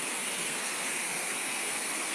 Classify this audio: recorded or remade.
remade